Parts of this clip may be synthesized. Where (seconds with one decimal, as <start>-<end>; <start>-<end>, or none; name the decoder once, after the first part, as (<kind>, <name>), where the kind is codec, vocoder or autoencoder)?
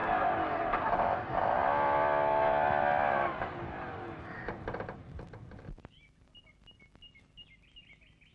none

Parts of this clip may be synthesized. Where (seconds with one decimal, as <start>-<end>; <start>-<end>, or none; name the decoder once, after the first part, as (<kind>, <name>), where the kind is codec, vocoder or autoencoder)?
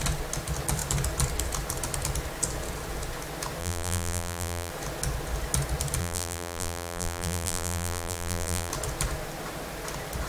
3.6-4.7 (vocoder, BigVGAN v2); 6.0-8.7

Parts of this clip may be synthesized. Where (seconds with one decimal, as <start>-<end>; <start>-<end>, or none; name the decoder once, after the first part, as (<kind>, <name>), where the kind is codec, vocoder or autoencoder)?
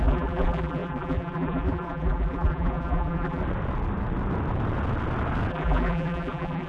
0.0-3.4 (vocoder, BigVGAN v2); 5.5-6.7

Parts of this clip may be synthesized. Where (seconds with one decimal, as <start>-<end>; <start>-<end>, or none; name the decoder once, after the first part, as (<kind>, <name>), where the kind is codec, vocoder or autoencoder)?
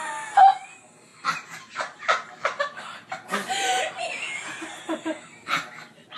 none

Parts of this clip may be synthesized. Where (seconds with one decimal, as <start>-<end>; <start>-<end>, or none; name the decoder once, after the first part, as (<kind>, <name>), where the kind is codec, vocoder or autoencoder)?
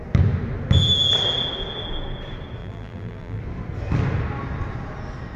2.6-3.4 (vocoder, BigVGAN v2)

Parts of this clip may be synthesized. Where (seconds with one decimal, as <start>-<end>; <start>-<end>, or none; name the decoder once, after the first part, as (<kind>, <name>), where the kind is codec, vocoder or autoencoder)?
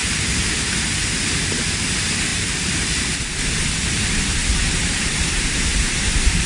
2.3-3.0 (vocoder, BigVGAN v2); 4.4-6.5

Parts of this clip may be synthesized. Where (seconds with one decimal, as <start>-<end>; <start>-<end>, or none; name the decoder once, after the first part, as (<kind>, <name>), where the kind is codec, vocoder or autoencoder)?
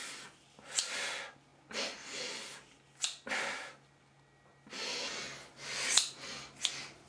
none